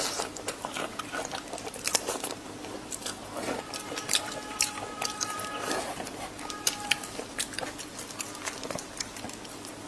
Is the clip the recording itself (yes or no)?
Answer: no